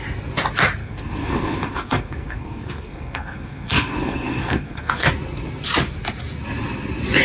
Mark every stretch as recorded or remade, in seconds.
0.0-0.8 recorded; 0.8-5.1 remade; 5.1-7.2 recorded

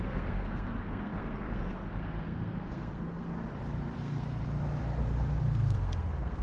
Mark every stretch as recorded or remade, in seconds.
0.0-3.3 remade; 3.3-4.0 recorded; 4.0-4.4 remade; 4.4-5.4 recorded; 5.4-6.4 remade

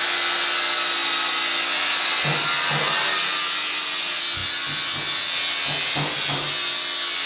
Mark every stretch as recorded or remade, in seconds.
0.0-7.3 recorded

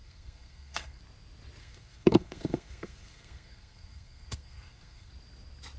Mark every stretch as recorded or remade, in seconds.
0.0-1.0 remade; 1.0-1.6 recorded; 1.6-5.1 remade; 5.1-5.8 recorded

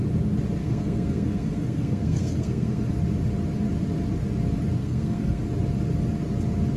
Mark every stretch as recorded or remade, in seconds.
0.0-0.6 recorded; 0.6-2.8 remade; 2.8-4.8 recorded; 4.8-5.4 remade; 5.4-6.8 recorded

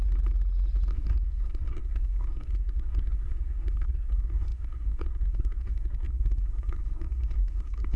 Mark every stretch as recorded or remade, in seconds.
0.0-0.9 recorded; 0.9-8.0 remade

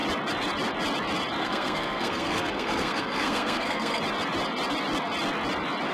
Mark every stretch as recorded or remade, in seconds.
0.0-1.4 recorded; 1.4-4.0 remade; 4.0-5.9 recorded

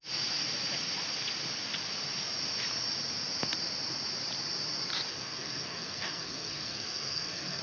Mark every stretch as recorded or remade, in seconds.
0.0-5.1 recorded; 5.1-7.6 remade